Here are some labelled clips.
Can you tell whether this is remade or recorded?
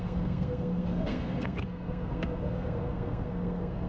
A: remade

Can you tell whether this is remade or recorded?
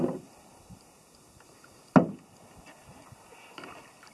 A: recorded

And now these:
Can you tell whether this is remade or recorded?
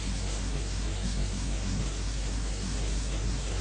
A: remade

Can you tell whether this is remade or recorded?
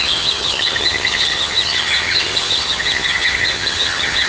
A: remade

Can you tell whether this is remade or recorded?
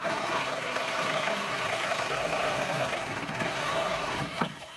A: remade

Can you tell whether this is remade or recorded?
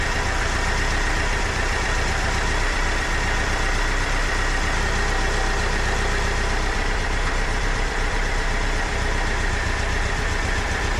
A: remade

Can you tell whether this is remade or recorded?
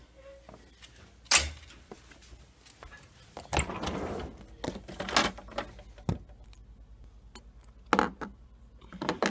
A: recorded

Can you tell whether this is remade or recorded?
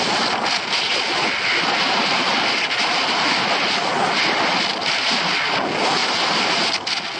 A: recorded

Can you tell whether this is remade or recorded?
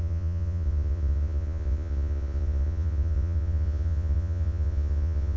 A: remade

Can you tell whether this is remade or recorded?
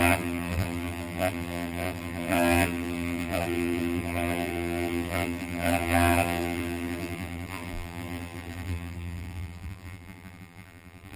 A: remade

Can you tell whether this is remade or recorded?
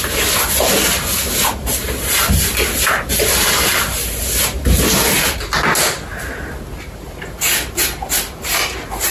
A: recorded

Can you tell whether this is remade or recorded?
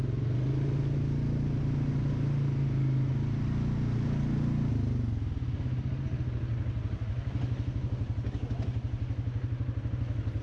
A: recorded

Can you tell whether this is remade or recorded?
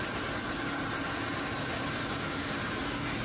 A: recorded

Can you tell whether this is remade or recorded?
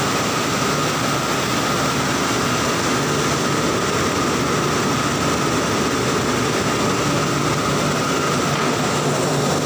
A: recorded